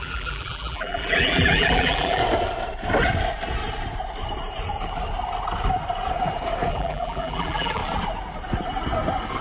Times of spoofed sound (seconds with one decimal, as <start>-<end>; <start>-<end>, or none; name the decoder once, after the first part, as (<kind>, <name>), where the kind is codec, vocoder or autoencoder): 0.0-2.2 (vocoder, BigVGAN v2); 6.7-7.8